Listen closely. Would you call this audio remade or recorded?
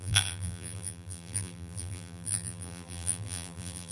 remade